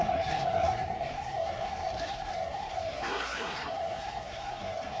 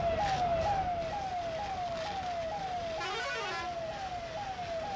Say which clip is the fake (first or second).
first